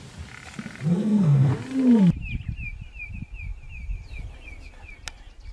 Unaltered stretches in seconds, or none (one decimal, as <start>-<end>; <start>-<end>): 0.0-0.9; 1.5-5.5

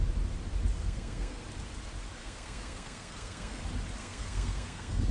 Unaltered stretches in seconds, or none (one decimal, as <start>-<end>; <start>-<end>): 0.0-0.8; 1.4-2.2; 3.6-4.0

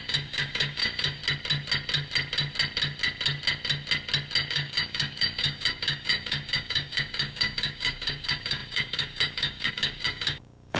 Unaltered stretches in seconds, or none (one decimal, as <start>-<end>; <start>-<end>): 1.2-4.5

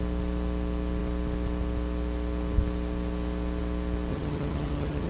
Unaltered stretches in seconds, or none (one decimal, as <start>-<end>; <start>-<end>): 0.0-4.1

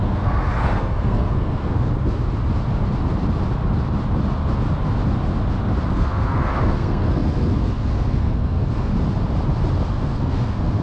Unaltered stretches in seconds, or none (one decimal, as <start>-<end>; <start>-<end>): 1.9-5.9; 8.9-9.9

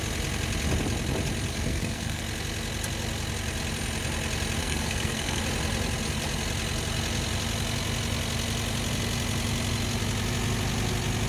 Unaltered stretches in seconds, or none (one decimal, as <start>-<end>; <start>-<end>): 0.0-1.5; 2.2-4.6; 5.4-11.3